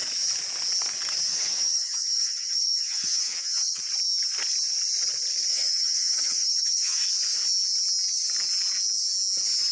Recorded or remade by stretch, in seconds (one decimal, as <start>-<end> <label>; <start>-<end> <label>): 0.0-1.3 recorded; 1.3-3.8 remade; 3.8-5.5 recorded; 5.5-7.0 remade; 7.0-9.7 recorded